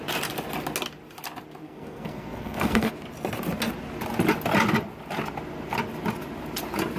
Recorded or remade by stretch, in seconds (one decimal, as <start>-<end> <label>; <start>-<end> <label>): 0.0-1.6 recorded; 1.6-2.9 remade; 2.9-7.0 recorded